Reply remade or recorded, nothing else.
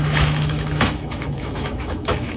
remade